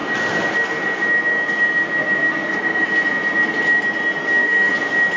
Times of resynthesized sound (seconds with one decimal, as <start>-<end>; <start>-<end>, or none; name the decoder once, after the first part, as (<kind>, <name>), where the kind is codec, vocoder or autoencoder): 4.2-4.7 (codec, SNAC)